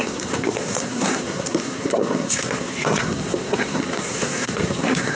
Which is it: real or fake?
fake